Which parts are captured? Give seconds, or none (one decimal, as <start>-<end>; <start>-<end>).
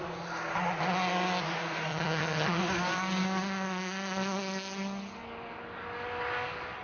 0.0-1.9; 2.6-6.8